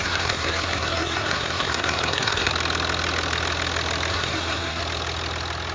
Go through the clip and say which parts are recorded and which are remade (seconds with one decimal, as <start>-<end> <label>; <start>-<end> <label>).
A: 0.0-2.5 remade; 2.5-4.1 recorded; 4.1-4.8 remade; 4.8-5.7 recorded